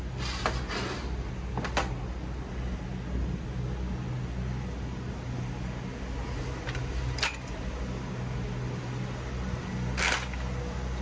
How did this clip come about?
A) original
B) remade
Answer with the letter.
A